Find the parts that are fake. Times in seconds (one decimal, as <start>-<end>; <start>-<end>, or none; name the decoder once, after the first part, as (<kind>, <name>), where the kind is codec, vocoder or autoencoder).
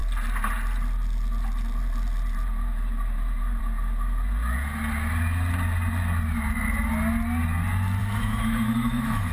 8.0-9.3 (autoencoder, DAC-VAE)